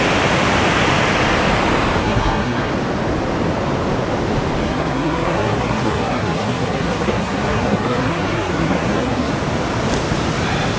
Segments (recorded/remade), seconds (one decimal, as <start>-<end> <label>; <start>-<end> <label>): 0.0-2.0 recorded; 2.0-2.7 remade; 2.7-4.6 recorded; 4.6-9.3 remade; 9.3-10.8 recorded